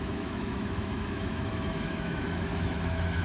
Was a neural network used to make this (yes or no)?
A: yes